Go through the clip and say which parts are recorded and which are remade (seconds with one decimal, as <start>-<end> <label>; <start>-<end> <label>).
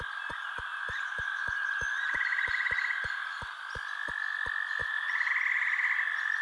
0.0-0.7 recorded; 0.7-2.5 remade; 2.5-4.8 recorded; 4.8-5.3 remade; 5.3-6.4 recorded